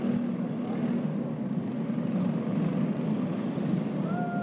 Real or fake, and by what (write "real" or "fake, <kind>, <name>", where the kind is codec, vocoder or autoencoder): real